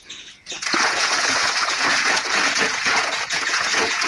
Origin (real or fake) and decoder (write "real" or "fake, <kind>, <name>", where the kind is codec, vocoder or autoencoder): fake, vocoder, Vocos